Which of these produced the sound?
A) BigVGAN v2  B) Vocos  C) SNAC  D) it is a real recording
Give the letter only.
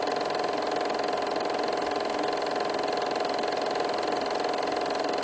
D